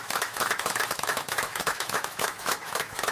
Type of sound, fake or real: fake